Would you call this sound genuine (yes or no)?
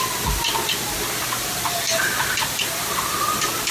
yes